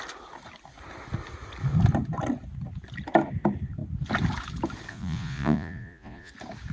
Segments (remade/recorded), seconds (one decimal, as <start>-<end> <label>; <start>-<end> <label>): 0.0-4.9 recorded; 4.9-6.3 remade; 6.3-6.7 recorded